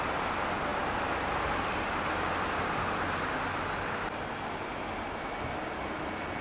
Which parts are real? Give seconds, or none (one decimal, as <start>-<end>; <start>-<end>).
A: 0.0-6.4